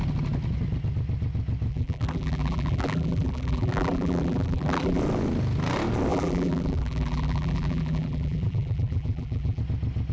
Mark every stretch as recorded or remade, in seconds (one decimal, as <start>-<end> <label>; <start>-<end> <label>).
0.0-1.7 recorded; 1.7-5.0 remade; 5.0-6.1 recorded; 6.1-9.6 remade; 9.6-10.1 recorded